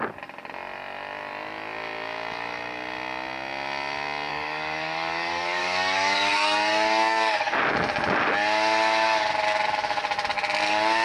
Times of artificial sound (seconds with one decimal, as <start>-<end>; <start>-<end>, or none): 4.3-7.6

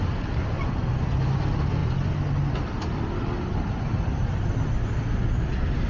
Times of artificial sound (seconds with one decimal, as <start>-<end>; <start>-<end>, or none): none

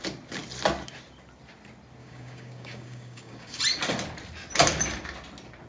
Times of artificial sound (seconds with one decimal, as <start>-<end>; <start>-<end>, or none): 2.0-3.6